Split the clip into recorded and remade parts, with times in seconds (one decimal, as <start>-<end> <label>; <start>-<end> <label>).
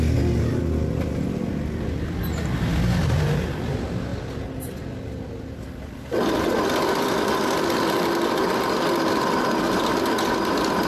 0.0-10.9 recorded